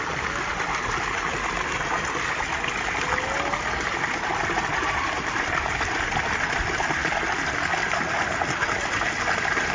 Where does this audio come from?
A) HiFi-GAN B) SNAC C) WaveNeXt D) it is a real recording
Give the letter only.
D